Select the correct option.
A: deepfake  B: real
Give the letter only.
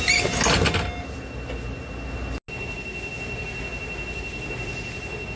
B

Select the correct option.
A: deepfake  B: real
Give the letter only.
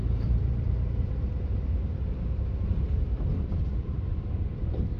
A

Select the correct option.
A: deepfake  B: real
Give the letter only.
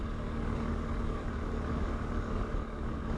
A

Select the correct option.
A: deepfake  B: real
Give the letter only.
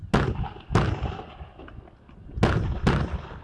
B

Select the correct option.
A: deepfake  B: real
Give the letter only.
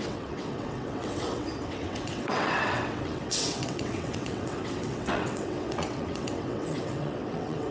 A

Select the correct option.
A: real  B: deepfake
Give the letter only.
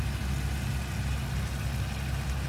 A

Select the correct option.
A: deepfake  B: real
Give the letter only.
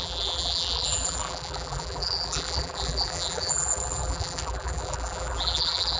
A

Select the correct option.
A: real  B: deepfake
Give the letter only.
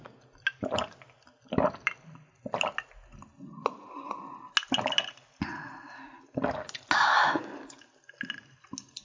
A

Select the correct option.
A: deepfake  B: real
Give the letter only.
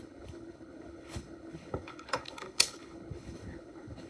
A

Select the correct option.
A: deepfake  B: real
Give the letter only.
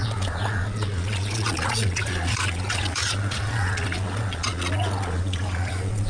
A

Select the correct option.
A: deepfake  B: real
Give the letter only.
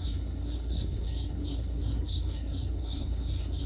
A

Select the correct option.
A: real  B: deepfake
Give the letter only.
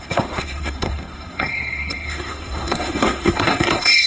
B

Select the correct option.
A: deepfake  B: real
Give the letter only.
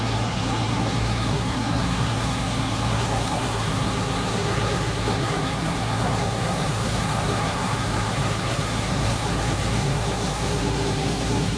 A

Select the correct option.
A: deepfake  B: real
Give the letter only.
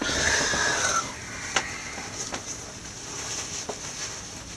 B